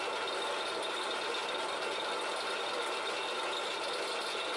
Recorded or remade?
recorded